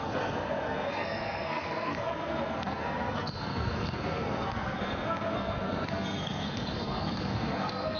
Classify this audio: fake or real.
fake